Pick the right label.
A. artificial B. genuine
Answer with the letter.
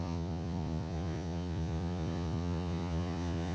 A